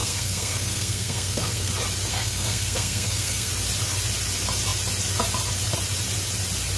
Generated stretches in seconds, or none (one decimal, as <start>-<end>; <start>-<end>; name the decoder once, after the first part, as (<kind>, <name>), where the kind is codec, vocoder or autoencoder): 0.0-1.7 (codec, SNAC); 2.1-3.5